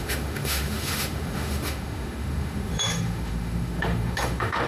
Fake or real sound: fake